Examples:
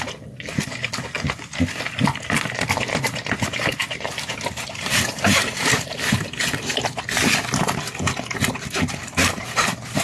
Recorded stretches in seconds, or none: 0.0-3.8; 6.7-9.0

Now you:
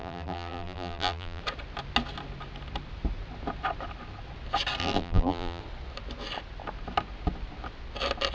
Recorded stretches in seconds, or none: 1.4-4.8; 5.6-8.3

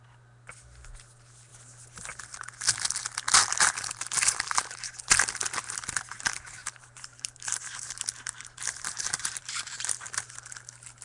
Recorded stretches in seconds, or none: 0.0-6.6; 9.9-11.0

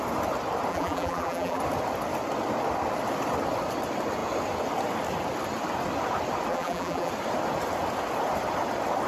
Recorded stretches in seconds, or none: 0.0-0.7; 1.6-6.5; 7.1-9.1

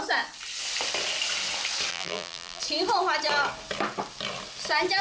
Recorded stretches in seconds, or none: 0.0-1.9; 2.6-5.0

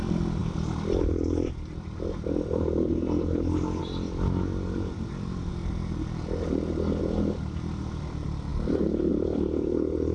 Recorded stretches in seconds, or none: 5.5-7.0; 8.5-9.1

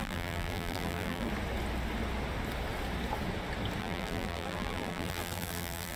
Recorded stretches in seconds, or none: 1.3-3.8